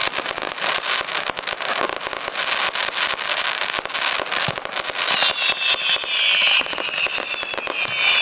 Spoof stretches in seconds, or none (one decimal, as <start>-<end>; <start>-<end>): none